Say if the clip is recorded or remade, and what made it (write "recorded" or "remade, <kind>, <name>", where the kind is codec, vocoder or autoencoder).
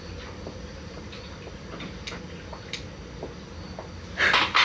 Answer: recorded